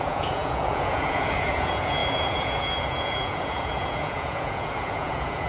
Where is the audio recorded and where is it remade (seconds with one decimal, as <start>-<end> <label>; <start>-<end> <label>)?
0.0-5.5 remade